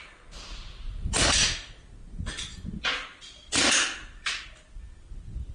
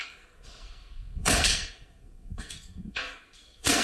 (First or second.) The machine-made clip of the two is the second